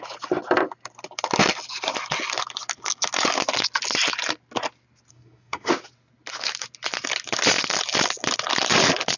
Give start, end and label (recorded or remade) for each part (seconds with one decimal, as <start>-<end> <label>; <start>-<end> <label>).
0.0-5.1 recorded; 5.1-5.7 remade; 5.7-9.2 recorded